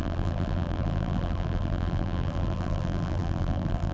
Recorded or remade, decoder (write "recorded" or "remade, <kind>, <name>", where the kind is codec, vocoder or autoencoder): remade, vocoder, BigVGAN v2